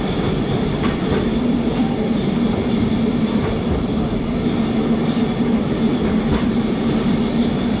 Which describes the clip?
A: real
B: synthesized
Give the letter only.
B